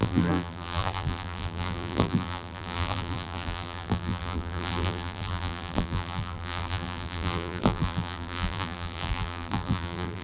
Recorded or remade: remade